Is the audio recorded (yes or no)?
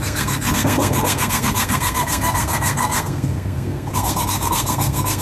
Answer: no